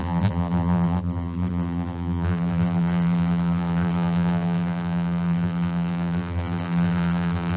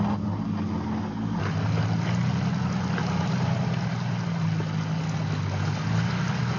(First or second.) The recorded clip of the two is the second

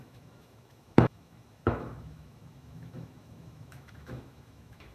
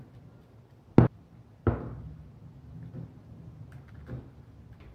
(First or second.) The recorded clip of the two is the second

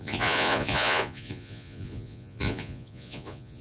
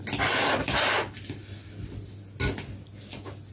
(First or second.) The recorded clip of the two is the second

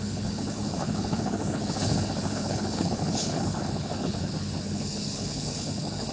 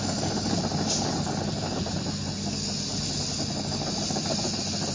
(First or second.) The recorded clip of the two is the second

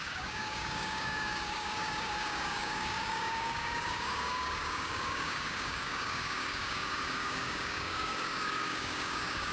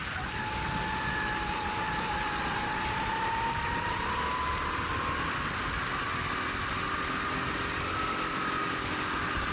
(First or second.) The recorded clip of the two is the second